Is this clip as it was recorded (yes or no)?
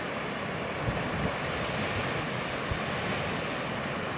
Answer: yes